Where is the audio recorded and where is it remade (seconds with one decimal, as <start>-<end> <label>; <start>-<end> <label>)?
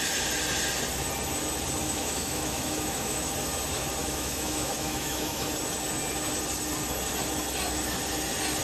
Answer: 0.0-1.8 recorded; 1.8-3.3 remade; 3.3-4.0 recorded; 4.0-5.5 remade; 5.5-8.6 recorded